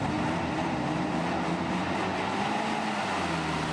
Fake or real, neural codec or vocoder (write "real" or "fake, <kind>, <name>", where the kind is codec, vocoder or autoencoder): real